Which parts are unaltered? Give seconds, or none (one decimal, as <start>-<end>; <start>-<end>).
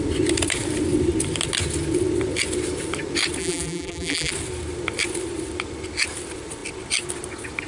0.0-3.4; 4.3-7.7